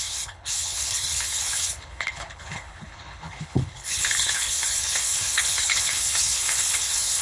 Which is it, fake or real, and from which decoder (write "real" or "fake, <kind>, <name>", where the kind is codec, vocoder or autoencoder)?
fake, codec, HILCodec